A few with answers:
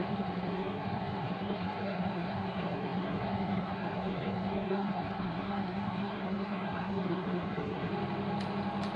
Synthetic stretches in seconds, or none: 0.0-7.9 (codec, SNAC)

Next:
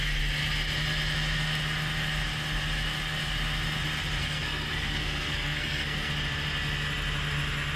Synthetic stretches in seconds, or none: 4.2-6.1 (codec, SNAC)

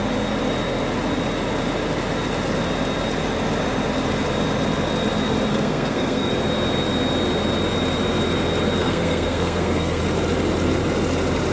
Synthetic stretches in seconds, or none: 5.5-6.3 (codec, SNAC); 8.8-10.0

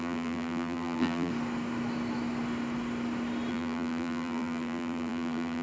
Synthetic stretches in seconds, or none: 0.0-1.3 (vocoder, BigVGAN v2); 3.5-5.6